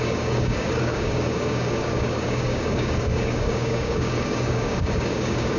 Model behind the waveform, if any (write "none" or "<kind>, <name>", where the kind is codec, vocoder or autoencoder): codec, DAC